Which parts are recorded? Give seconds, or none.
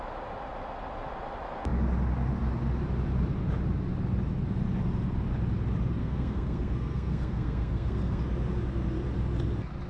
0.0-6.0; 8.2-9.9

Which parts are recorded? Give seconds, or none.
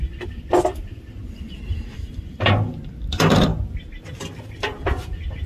0.0-5.5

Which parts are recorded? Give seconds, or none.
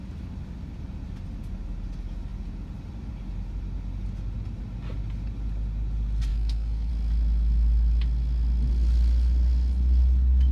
0.0-6.3; 6.9-10.5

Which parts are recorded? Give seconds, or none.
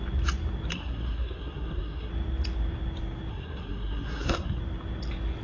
0.0-0.7; 2.1-3.3; 4.6-5.4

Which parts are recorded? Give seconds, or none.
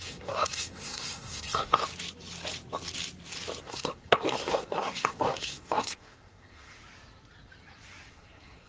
1.8-3.6; 6.8-8.1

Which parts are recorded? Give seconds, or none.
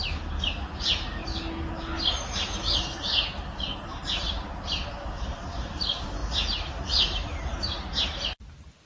0.0-8.9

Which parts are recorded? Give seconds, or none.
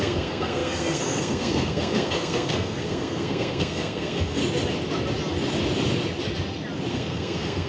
4.4-6.9